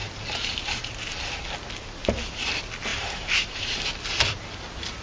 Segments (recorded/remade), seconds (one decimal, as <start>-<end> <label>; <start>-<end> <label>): 0.0-1.4 remade; 1.4-2.0 recorded; 2.0-2.5 remade; 2.5-2.9 recorded; 2.9-3.8 remade; 3.8-5.0 recorded

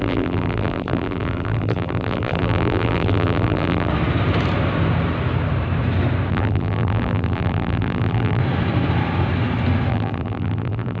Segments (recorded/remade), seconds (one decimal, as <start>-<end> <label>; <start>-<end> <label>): 0.0-3.9 remade; 3.9-6.3 recorded; 6.3-8.4 remade; 8.4-9.9 recorded; 9.9-11.0 remade

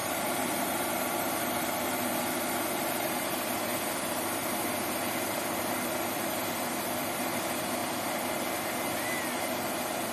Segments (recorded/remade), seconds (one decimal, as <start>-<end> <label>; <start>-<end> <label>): 0.0-0.9 remade; 0.9-10.1 recorded

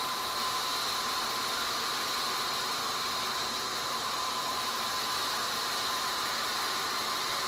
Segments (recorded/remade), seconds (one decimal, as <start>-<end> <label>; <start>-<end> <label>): 0.0-3.7 recorded; 3.7-4.7 remade; 4.7-5.4 recorded; 5.4-7.5 remade

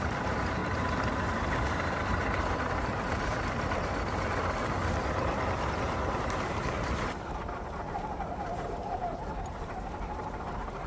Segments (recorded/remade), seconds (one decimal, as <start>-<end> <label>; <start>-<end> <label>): 0.0-0.6 remade; 0.6-1.2 recorded; 1.2-10.9 remade

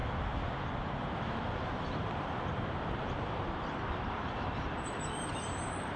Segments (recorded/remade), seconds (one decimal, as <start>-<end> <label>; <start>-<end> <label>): 0.0-1.0 recorded; 1.0-6.0 remade

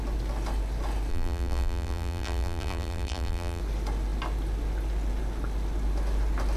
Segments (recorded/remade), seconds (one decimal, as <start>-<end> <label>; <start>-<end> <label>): 0.0-1.1 recorded; 1.1-3.6 remade; 3.6-6.6 recorded

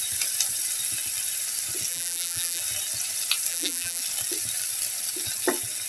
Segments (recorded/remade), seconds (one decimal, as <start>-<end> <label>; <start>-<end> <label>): 0.0-1.9 recorded; 1.9-2.6 remade; 2.6-3.5 recorded; 3.5-4.0 remade; 4.0-5.9 recorded